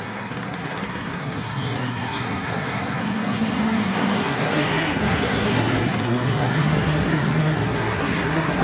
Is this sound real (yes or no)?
no